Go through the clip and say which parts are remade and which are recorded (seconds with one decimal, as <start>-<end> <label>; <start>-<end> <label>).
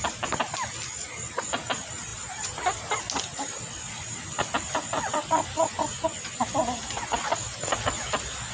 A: 0.0-8.5 recorded